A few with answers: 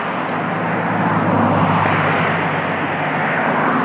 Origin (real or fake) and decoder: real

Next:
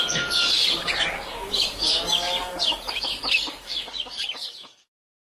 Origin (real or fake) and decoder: fake, codec, DAC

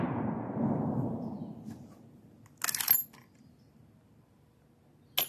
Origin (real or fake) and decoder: real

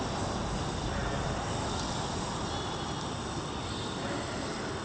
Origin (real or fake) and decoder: real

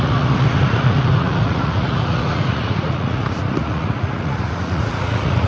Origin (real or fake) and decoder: fake, vocoder, Vocos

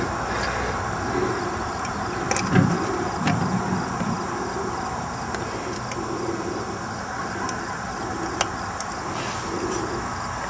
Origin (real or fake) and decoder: real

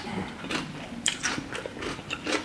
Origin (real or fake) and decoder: real